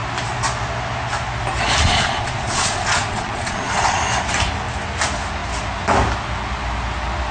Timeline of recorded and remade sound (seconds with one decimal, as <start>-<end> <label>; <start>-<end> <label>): 0.0-1.8 recorded; 1.8-4.0 remade; 4.0-7.3 recorded